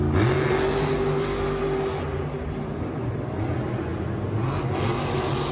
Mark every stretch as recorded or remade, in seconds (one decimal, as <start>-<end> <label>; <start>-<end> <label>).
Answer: 0.0-5.5 recorded

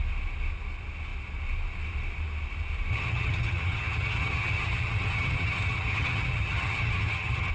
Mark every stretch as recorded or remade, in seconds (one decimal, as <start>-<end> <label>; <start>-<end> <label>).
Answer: 0.0-2.9 recorded; 2.9-7.5 remade

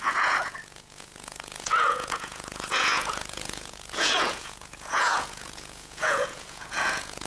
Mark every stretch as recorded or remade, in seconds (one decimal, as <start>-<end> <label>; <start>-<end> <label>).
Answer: 0.0-7.3 remade

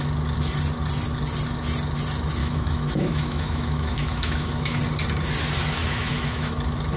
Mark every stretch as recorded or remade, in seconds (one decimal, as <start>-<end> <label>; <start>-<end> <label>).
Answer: 0.0-2.4 recorded; 2.4-4.8 remade; 4.8-5.8 recorded; 5.8-6.5 remade; 6.5-7.0 recorded